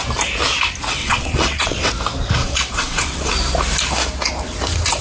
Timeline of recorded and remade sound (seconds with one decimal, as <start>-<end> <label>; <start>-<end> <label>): 0.0-1.0 recorded; 1.0-1.9 remade; 1.9-2.4 recorded; 2.4-3.3 remade; 3.3-5.0 recorded